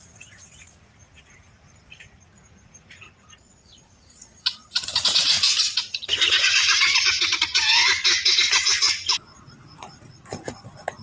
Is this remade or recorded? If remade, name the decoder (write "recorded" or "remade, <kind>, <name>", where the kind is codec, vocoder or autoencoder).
remade, vocoder, Vocos